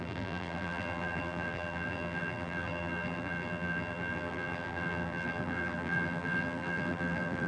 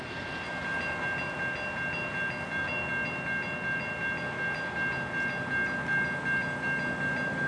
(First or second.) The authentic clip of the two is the second